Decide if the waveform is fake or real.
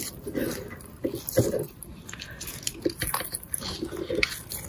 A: real